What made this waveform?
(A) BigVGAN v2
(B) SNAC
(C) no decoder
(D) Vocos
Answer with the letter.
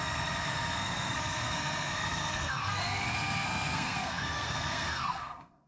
B